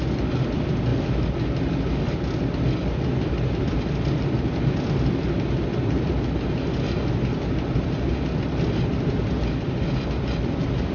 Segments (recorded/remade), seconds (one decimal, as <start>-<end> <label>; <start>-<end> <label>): 0.0-10.9 recorded

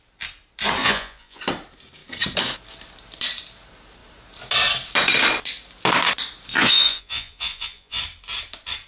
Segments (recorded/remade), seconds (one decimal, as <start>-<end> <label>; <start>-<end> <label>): 0.0-0.8 recorded; 0.8-1.4 remade; 1.4-6.5 recorded; 6.5-8.0 remade; 8.0-8.9 recorded

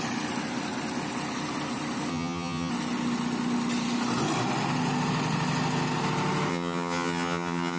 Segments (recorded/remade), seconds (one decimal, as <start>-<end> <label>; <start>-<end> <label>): 0.0-2.1 recorded; 2.1-2.7 remade; 2.7-6.5 recorded; 6.5-7.8 remade